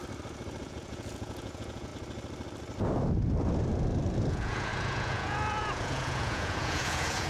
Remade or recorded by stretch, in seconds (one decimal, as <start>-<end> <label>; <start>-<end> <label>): 0.0-0.6 recorded; 0.6-1.9 remade; 1.9-4.3 recorded; 4.3-7.3 remade